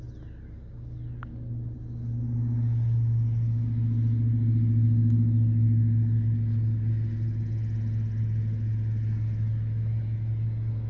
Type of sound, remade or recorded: recorded